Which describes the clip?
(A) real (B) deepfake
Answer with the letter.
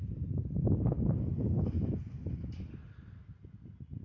A